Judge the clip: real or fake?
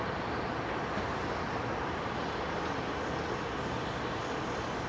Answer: real